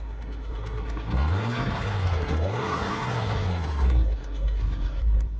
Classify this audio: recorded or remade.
remade